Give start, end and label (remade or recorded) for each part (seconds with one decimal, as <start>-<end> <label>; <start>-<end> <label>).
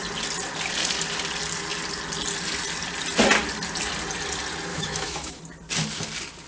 0.0-4.7 recorded; 4.7-5.4 remade; 5.4-6.5 recorded